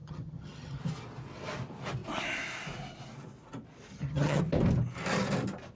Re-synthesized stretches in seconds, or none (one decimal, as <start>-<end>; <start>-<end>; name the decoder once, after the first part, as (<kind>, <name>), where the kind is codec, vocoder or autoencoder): 0.0-0.8 (vocoder, HiFi-GAN); 3.9-4.4